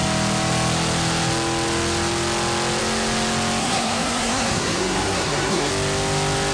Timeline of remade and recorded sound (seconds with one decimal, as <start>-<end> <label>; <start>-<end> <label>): 0.0-3.6 recorded; 3.6-5.7 remade; 5.7-6.5 recorded